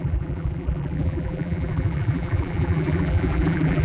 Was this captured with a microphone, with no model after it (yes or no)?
no